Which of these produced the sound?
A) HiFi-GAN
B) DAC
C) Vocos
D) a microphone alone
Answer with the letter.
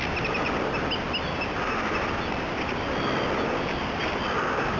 D